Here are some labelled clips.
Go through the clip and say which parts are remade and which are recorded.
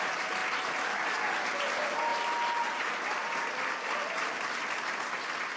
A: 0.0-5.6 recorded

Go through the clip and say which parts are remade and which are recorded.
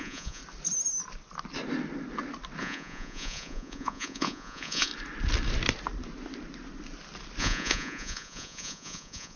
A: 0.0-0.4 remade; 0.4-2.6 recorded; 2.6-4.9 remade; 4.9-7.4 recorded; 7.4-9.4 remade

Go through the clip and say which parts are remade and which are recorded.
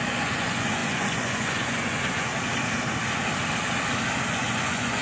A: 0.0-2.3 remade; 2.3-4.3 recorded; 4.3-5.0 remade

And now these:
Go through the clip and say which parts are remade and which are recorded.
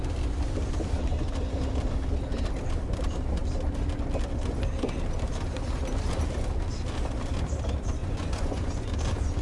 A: 0.0-8.0 recorded; 8.0-8.9 remade; 8.9-9.4 recorded